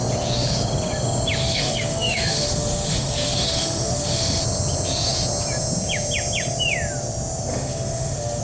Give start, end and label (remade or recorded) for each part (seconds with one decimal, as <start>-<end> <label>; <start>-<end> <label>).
0.0-1.4 recorded; 1.4-4.4 remade; 4.4-7.5 recorded; 7.5-8.4 remade